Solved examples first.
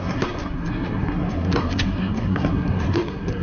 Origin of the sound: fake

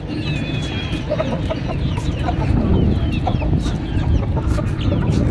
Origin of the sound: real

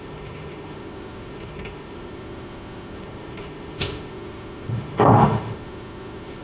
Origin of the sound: fake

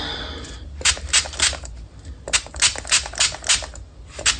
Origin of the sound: real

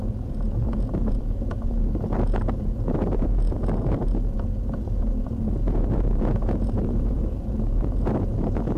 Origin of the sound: fake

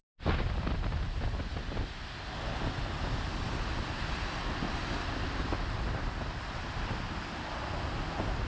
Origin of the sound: real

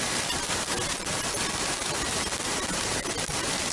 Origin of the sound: real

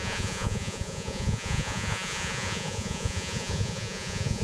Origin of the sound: fake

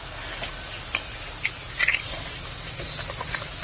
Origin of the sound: real